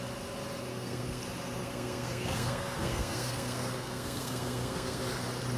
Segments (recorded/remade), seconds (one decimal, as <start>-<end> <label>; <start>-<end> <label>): 0.0-0.7 recorded; 0.7-1.2 remade; 1.2-1.6 recorded; 1.6-5.0 remade; 5.0-5.6 recorded